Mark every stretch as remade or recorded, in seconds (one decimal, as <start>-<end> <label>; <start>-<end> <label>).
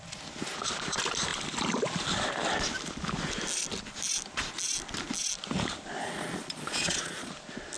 0.0-6.0 recorded; 6.0-7.3 remade; 7.3-7.8 recorded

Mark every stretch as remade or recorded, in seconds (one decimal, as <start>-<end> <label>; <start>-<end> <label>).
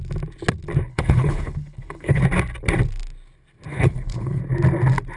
0.0-0.9 recorded; 0.9-2.2 remade; 2.2-3.7 recorded; 3.7-4.4 remade; 4.4-5.2 recorded